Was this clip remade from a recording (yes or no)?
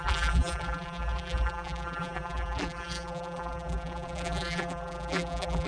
yes